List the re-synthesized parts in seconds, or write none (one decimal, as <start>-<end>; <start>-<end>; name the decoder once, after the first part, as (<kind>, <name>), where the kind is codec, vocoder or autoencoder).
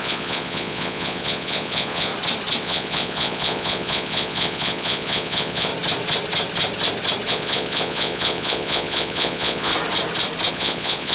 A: 0.0-2.1 (vocoder, Vocos); 2.6-5.7; 7.3-9.7; 10.5-11.1